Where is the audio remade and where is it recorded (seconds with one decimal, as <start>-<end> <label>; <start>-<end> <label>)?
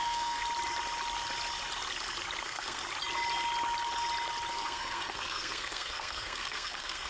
0.0-0.4 remade; 0.4-2.4 recorded; 2.4-2.8 remade; 2.8-4.5 recorded; 4.5-7.1 remade